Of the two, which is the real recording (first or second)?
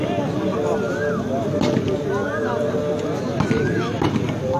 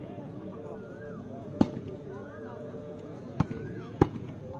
first